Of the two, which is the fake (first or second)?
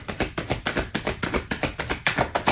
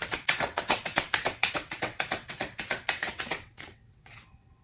second